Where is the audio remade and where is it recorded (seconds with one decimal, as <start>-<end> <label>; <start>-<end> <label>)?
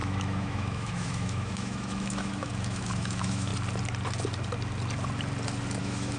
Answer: 0.0-3.5 remade; 3.5-5.8 recorded; 5.8-6.2 remade